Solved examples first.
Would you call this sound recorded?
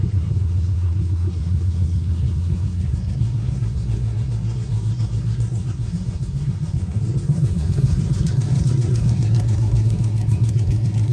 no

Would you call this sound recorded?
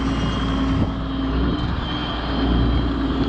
yes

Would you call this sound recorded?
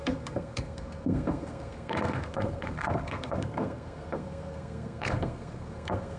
no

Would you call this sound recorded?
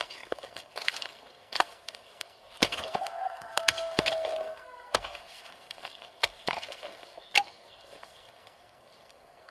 no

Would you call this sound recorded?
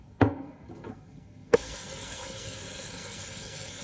no